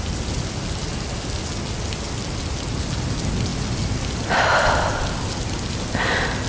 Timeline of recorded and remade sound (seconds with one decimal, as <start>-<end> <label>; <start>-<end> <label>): 0.0-6.5 recorded